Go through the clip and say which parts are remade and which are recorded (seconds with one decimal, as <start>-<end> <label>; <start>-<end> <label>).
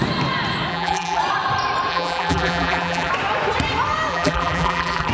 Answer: 0.0-0.7 recorded; 0.7-1.2 remade; 1.2-1.9 recorded; 1.9-3.1 remade; 3.1-4.1 recorded; 4.1-5.1 remade